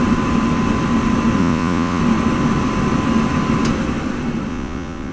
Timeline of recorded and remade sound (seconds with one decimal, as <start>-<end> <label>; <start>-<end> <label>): 0.0-1.4 recorded; 1.4-2.0 remade; 2.0-4.5 recorded; 4.5-5.1 remade